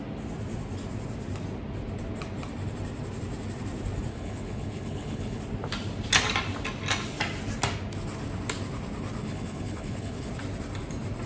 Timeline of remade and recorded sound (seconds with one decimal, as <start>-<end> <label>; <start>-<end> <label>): 0.0-4.1 recorded; 4.1-5.4 remade; 5.4-9.2 recorded; 9.2-10.3 remade; 10.3-11.3 recorded